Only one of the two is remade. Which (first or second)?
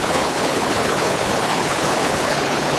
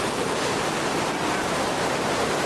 first